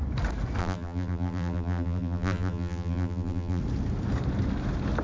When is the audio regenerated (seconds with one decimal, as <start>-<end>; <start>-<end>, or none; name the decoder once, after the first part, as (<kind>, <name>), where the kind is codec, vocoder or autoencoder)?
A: 0.6-3.6 (vocoder, BigVGAN v2)